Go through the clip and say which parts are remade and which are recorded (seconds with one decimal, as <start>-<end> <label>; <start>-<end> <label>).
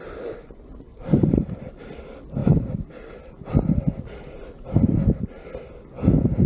0.0-0.9 recorded; 0.9-1.8 remade; 1.8-2.4 recorded; 2.4-3.3 remade; 3.3-6.5 recorded